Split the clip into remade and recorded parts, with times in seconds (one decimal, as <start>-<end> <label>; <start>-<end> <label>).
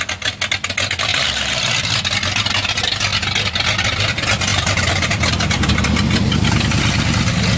0.0-1.1 recorded; 1.1-2.0 remade; 2.0-4.5 recorded; 4.5-5.6 remade; 5.6-7.6 recorded